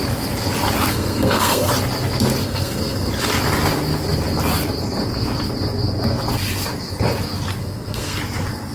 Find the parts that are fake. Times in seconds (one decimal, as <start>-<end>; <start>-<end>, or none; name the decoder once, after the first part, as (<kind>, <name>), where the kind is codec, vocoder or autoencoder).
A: 0.9-1.7 (codec, SNAC); 2.4-3.1; 7.6-8.2